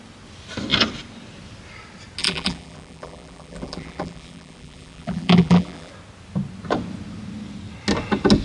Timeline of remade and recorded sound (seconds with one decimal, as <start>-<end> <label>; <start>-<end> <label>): 0.0-2.2 recorded; 2.2-5.9 remade; 5.9-8.4 recorded